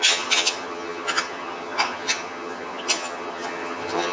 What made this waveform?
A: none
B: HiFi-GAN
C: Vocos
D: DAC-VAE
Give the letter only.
B